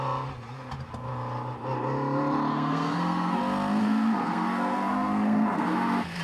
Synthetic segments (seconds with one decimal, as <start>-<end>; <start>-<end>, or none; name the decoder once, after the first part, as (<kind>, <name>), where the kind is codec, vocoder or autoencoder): 2.5-3.4 (codec, SNAC); 3.8-6.2